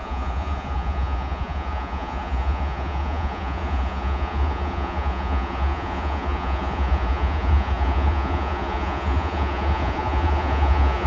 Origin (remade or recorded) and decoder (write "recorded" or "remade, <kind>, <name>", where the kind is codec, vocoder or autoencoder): remade, vocoder, Vocos